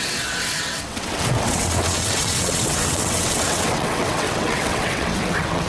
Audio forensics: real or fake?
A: fake